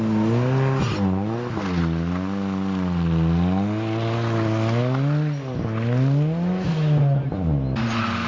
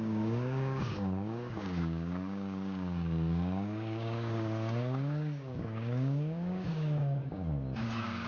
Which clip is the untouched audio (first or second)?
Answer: first